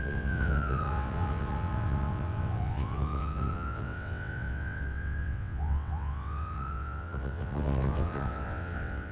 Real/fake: fake